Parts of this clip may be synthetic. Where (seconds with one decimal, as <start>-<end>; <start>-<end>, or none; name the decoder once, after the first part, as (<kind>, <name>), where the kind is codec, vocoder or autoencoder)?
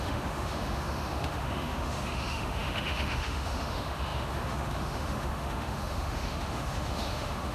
0.0-7.5 (autoencoder, DAC-VAE)